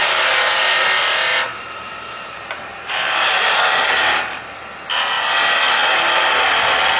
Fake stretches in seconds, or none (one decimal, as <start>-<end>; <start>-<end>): 1.3-4.4